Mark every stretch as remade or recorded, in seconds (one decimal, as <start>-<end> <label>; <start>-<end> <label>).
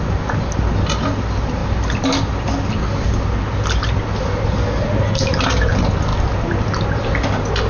0.0-7.7 recorded